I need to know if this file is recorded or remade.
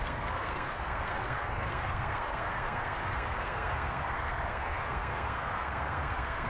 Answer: remade